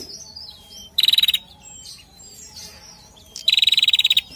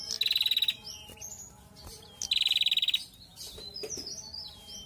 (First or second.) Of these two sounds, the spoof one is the first